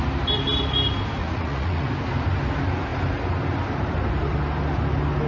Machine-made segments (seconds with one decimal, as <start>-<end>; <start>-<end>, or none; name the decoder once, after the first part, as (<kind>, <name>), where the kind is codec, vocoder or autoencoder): 1.2-1.9 (vocoder, Vocos)